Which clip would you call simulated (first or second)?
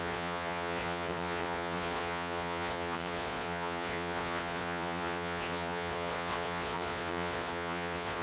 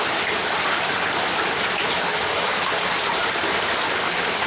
first